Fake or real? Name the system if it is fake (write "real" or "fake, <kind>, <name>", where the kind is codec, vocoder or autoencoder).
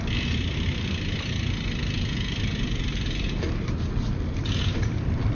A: real